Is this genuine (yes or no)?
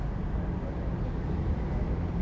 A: yes